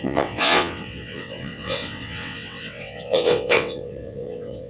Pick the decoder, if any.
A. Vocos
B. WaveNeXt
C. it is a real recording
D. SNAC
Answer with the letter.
B